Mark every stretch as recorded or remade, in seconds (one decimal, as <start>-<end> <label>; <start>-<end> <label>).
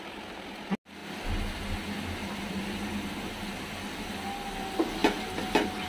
0.0-5.9 recorded